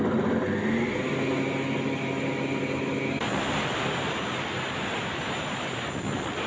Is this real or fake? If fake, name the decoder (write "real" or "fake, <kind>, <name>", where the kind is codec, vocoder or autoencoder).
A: real